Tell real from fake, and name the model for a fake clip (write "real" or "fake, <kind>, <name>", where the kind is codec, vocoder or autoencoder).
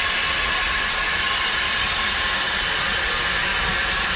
real